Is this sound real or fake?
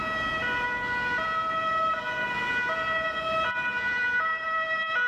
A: real